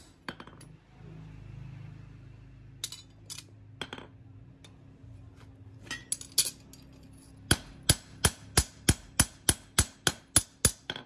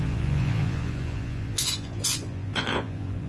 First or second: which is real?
first